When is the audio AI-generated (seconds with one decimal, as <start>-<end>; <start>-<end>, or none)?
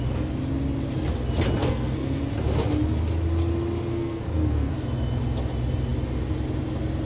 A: 1.6-2.2; 3.9-4.7